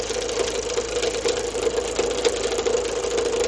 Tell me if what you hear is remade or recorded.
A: recorded